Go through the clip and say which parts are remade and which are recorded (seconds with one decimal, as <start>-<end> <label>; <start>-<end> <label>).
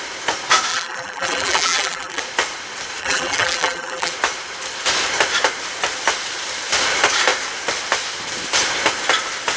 0.0-0.7 recorded; 0.7-2.2 remade; 2.2-3.0 recorded; 3.0-4.1 remade; 4.1-9.6 recorded